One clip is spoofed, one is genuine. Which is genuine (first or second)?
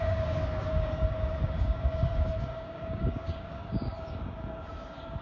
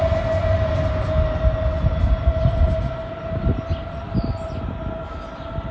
second